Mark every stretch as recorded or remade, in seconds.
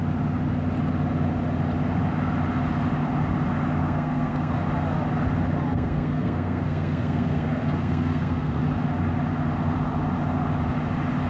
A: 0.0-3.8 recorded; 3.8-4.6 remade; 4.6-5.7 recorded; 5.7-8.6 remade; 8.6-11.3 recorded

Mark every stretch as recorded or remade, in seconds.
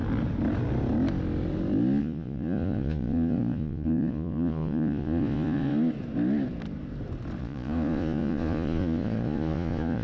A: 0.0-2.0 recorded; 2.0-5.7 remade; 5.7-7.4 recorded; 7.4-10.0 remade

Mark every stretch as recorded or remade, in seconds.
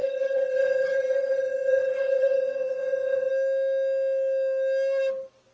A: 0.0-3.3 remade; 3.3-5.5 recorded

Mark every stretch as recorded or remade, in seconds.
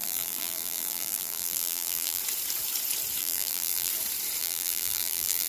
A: 0.0-2.2 remade; 2.2-3.2 recorded; 3.2-3.9 remade; 3.9-4.4 recorded; 4.4-5.5 remade